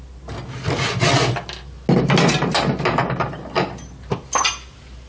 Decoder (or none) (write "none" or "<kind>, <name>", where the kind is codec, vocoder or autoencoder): none